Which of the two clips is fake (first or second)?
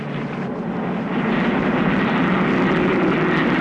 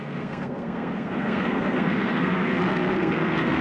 second